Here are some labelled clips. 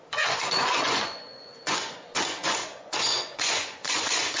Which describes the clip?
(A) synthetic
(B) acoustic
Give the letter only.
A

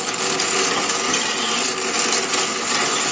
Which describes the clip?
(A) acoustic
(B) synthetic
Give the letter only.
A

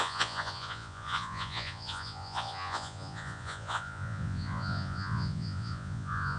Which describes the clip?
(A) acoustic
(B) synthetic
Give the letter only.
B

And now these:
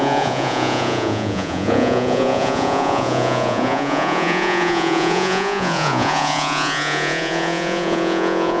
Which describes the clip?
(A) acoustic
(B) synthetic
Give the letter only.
B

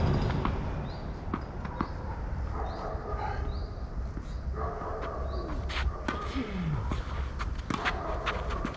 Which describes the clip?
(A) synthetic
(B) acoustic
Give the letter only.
B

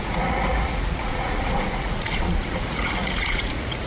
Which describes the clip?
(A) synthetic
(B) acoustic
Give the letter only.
A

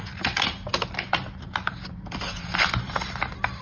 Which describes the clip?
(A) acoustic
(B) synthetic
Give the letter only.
A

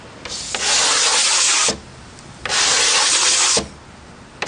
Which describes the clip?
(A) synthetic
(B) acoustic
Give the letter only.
B